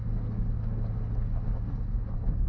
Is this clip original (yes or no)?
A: yes